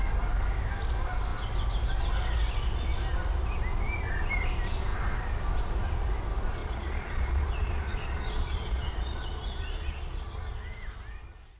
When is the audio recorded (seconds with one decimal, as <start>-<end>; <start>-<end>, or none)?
0.0-6.6; 10.3-11.6